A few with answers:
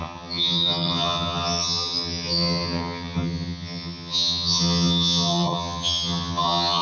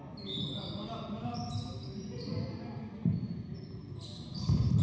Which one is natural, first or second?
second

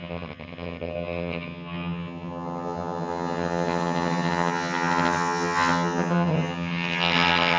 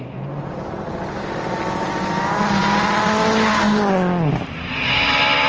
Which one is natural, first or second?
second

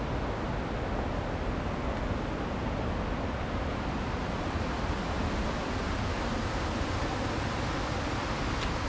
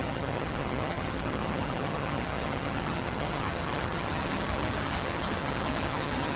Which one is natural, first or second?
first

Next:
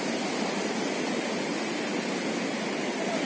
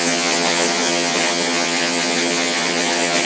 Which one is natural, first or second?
first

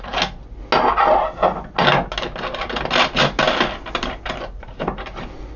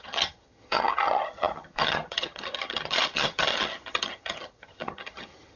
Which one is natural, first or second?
first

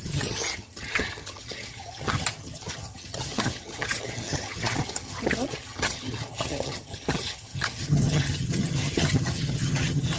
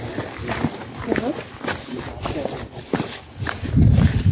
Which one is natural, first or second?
second